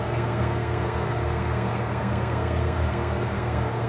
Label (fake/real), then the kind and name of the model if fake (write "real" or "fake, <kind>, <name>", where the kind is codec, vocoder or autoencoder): fake, codec, SNAC